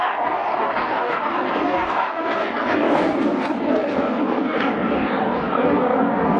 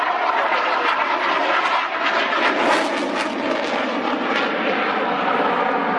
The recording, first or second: second